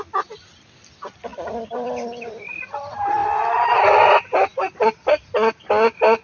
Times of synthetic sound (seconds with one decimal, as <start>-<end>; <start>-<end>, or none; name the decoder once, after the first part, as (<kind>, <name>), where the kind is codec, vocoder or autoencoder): 1.3-2.5 (vocoder, BigVGAN v2); 3.2-4.1